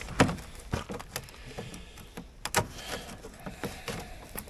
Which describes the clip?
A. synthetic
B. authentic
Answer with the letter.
B